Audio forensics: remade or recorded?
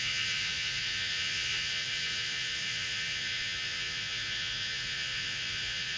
remade